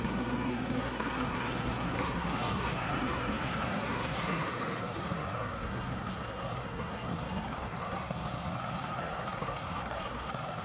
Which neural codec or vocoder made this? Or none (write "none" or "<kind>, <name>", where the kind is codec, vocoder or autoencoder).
codec, SNAC